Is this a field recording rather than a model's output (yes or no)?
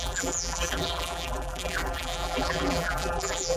no